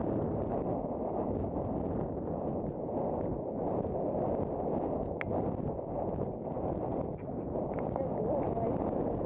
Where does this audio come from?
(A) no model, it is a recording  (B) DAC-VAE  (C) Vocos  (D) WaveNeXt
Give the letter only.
A